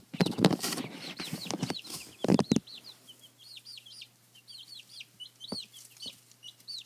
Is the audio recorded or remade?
recorded